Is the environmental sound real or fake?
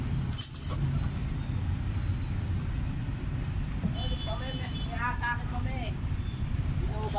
real